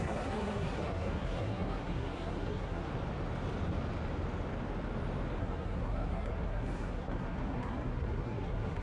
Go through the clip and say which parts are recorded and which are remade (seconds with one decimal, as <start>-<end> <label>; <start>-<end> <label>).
0.0-2.9 remade; 2.9-5.4 recorded; 5.4-8.8 remade